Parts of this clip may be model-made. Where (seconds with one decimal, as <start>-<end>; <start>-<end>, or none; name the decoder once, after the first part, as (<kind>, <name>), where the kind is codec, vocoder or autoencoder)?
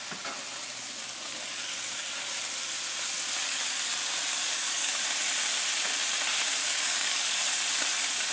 0.6-2.0 (codec, DAC); 3.4-3.9; 4.3-5.0; 6.6-7.4